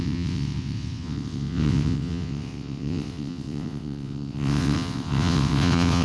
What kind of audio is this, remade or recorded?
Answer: remade